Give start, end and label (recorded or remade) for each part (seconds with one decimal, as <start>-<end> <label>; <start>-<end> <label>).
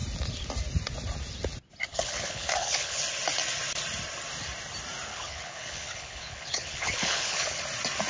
0.0-1.9 recorded; 1.9-3.0 remade; 3.0-5.1 recorded; 5.1-7.6 remade; 7.6-8.1 recorded